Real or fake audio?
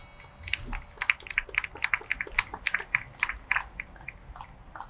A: real